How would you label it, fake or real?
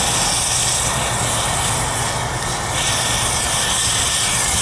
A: real